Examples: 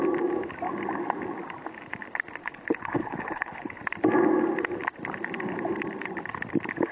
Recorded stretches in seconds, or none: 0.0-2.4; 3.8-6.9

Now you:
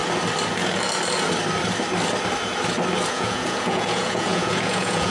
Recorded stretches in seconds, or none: 0.0-3.1

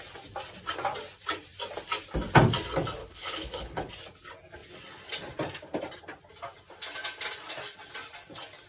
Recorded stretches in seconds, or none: 0.0-3.0; 3.9-8.7